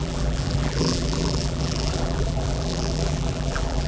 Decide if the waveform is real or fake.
fake